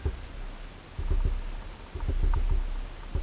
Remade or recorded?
recorded